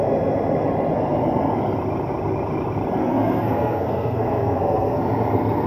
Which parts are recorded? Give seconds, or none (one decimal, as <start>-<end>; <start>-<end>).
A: 0.0-3.0; 5.0-5.7

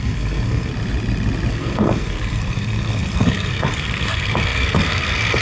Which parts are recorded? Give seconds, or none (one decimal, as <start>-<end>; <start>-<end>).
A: 0.7-1.5

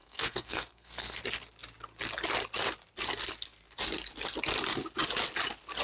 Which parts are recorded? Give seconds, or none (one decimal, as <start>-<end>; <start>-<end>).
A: 1.2-5.8

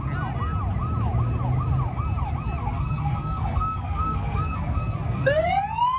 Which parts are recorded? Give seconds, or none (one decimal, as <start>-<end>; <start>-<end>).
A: 0.0-2.6; 5.5-6.0

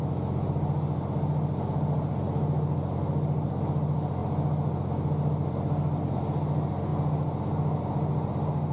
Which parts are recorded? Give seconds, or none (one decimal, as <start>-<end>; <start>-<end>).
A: 0.0-8.7

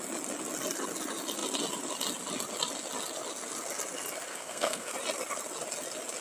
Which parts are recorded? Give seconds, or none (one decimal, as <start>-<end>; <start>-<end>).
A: 0.0-4.3; 4.9-6.2